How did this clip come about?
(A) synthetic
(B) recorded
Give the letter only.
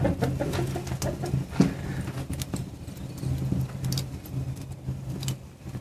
B